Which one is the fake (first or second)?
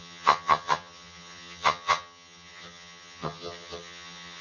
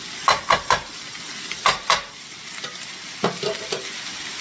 first